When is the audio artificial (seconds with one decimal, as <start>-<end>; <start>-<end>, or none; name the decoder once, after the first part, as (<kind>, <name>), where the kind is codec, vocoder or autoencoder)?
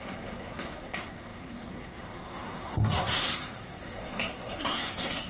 0.0-5.3 (codec, SNAC)